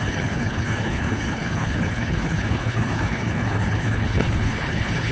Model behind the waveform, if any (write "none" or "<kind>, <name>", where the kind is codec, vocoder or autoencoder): codec, HILCodec